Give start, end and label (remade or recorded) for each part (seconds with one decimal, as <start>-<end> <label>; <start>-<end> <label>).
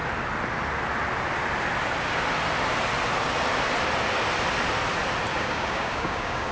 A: 0.0-5.3 recorded; 5.3-6.5 remade